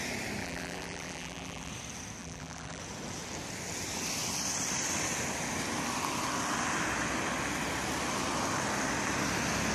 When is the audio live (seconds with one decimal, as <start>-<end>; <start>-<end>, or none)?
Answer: 0.0-0.4; 1.7-2.2; 2.8-9.7